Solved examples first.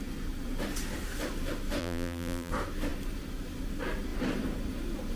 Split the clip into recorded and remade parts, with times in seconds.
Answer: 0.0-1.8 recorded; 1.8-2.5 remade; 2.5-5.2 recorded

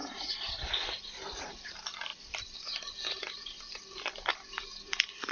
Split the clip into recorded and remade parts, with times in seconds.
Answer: 0.0-2.1 recorded; 2.1-5.3 remade

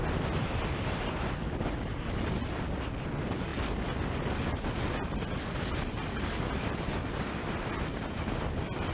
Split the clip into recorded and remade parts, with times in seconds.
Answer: 0.0-8.9 recorded

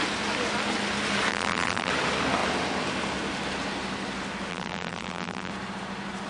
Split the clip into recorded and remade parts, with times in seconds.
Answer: 0.0-1.3 recorded; 1.3-1.9 remade; 1.9-4.5 recorded; 4.5-5.5 remade; 5.5-6.3 recorded

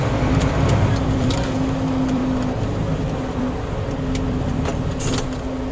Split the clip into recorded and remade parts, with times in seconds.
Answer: 0.0-2.2 remade; 2.2-3.1 recorded; 3.1-4.7 remade; 4.7-5.7 recorded

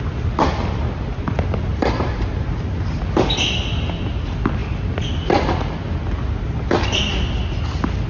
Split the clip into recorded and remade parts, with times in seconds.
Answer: 0.0-1.7 recorded; 1.7-3.0 remade; 3.0-8.1 recorded